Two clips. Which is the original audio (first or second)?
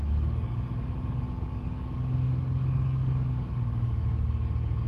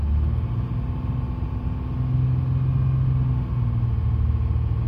second